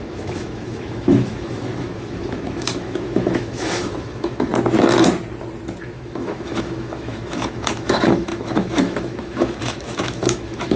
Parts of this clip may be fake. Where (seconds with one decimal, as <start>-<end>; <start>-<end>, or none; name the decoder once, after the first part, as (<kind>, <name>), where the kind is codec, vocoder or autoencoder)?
0.0-4.5 (autoencoder, DAC-VAE); 5.8-10.8